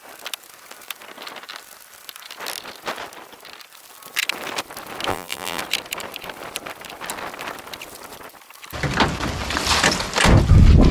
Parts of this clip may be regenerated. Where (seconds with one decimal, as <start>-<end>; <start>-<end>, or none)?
5.1-5.6